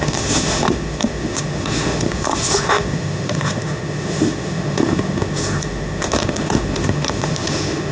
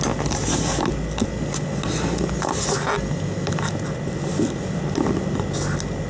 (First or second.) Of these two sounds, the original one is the second